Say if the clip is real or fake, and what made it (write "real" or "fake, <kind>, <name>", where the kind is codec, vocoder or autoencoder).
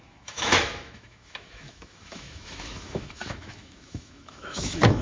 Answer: fake, autoencoder, DAC-VAE